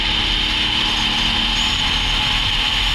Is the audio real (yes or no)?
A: yes